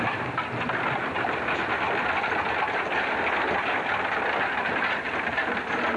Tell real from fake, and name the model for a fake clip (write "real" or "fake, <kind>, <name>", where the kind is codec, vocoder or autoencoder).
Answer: real